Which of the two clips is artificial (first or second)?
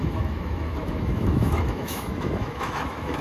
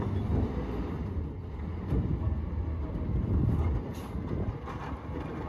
first